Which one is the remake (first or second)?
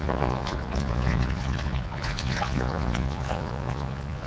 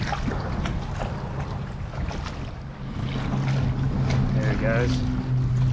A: first